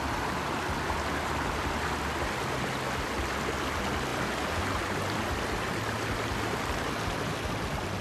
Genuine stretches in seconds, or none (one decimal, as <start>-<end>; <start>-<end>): 0.0-8.0